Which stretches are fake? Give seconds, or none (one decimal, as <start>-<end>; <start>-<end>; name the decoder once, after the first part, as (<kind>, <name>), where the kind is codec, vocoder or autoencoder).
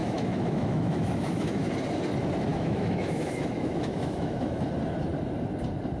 0.0-1.7 (autoencoder, DAC-VAE); 2.5-4.7